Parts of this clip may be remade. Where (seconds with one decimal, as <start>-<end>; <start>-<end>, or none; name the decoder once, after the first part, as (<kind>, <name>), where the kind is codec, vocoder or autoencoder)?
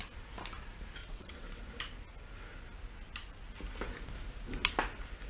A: 1.0-1.6 (vocoder, WaveNeXt)